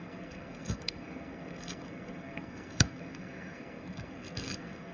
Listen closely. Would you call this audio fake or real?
fake